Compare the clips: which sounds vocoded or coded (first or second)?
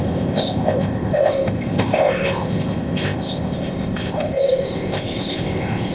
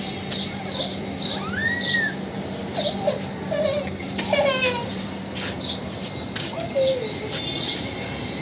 first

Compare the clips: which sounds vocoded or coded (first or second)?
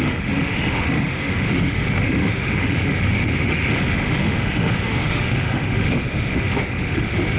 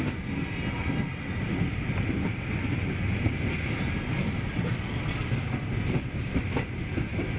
first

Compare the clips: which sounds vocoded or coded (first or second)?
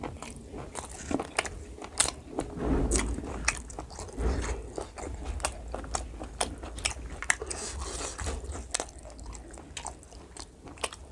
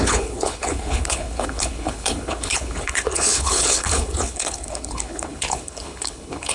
second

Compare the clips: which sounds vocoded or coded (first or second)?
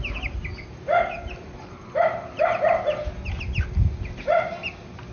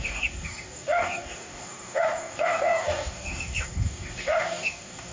second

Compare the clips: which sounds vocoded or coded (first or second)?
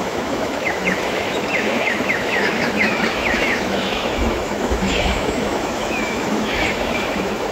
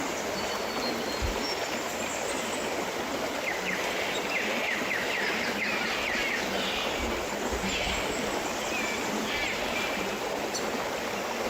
first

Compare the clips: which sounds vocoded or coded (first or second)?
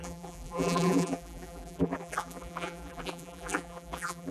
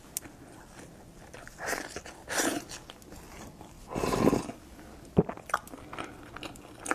first